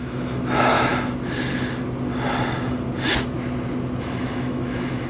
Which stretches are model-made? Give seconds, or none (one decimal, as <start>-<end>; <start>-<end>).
0.0-0.9; 4.0-5.1